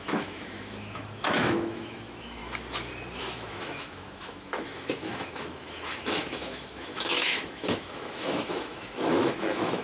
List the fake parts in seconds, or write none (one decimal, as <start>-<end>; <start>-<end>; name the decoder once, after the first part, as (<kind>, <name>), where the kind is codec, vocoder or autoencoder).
0.0-2.4 (autoencoder, DAC-VAE); 3.2-9.8